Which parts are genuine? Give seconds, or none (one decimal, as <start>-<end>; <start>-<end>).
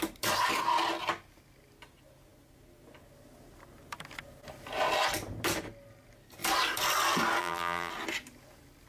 0.0-7.4; 7.9-8.9